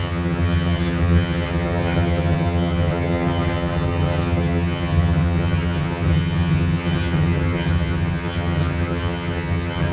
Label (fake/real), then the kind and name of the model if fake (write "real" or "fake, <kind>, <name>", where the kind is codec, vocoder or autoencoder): fake, vocoder, HiFi-GAN